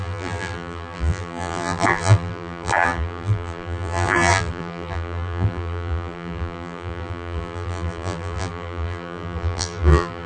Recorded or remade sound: remade